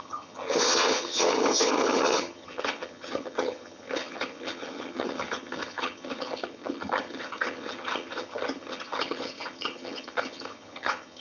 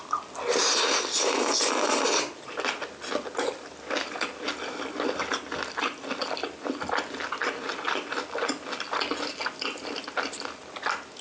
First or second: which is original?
second